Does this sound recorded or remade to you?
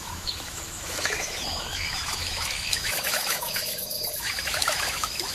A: remade